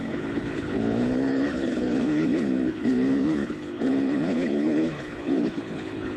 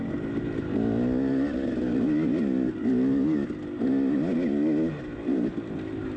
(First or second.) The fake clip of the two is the first